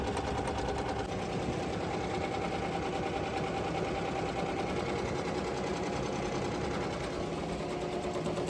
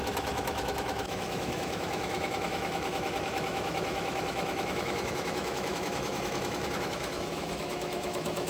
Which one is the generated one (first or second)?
second